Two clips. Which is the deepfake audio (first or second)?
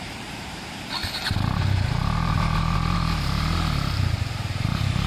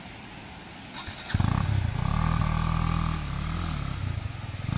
first